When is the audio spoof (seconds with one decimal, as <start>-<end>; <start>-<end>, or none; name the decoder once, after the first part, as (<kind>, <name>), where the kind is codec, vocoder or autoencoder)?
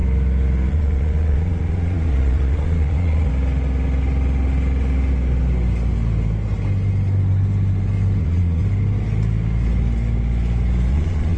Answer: 0.7-3.3 (vocoder, Vocos); 8.2-8.6; 10.9-11.4